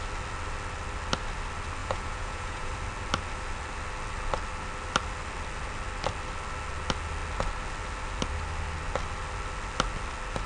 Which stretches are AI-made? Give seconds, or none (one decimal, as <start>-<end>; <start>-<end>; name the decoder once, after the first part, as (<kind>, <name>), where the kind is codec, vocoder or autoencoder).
1.8-2.7 (vocoder, Vocos)